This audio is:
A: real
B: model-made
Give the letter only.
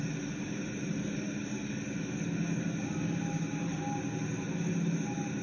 A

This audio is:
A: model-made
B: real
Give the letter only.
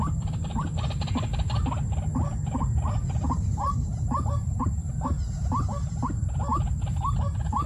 B